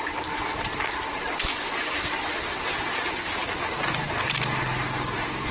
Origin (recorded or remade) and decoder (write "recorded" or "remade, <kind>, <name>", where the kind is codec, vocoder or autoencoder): recorded